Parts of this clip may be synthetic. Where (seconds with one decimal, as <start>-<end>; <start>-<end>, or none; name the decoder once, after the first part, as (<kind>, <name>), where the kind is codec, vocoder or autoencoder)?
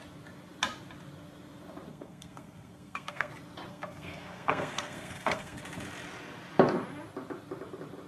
1.9-3.3 (codec, SNAC); 3.7-5.6